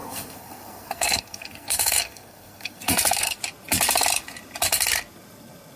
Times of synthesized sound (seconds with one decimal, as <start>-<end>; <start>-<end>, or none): 0.0-3.4